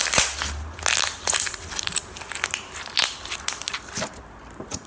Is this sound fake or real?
real